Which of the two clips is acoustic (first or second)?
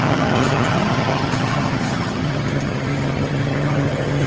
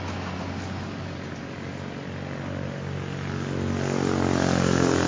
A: second